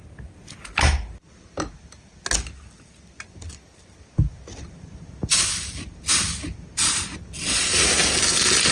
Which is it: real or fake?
real